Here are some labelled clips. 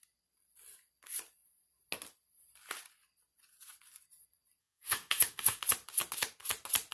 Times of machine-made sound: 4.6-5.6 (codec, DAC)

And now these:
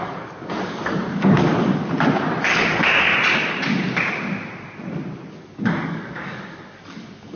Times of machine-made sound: 0.0-1.8 (codec, DAC); 2.4-3.1; 5.3-7.4

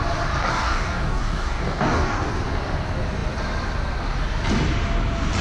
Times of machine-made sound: 0.5-2.3 (codec, DAC)

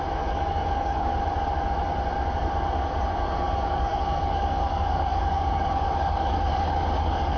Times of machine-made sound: 0.0-1.1 (codec, DAC); 3.1-7.4